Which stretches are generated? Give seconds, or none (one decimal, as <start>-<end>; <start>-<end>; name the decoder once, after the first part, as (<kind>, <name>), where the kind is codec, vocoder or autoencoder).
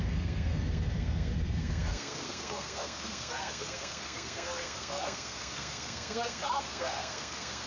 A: 0.0-7.7 (codec, SNAC)